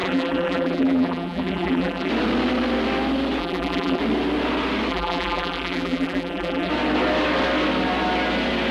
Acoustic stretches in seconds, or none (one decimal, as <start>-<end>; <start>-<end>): 2.1-3.4; 4.0-4.9; 6.7-8.7